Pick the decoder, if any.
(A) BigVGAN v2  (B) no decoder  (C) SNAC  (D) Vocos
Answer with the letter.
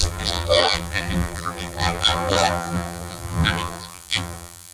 A